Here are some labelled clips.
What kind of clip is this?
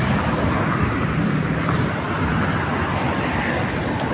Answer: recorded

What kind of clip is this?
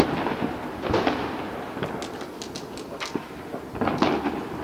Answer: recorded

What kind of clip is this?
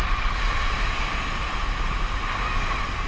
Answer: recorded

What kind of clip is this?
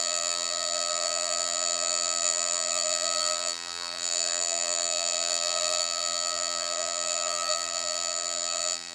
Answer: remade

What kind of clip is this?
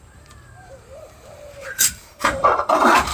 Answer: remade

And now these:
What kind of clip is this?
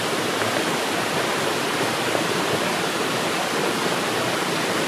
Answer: recorded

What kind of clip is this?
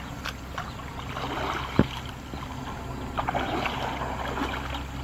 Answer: recorded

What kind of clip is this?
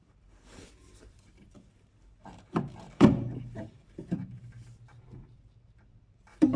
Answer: remade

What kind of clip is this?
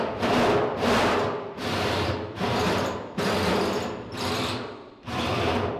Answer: remade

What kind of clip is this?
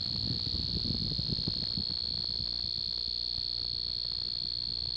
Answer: recorded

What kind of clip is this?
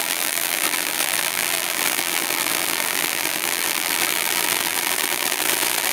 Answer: remade